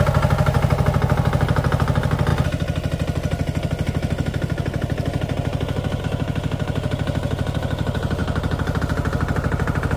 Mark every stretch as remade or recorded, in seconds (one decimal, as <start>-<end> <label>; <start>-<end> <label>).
0.0-10.0 recorded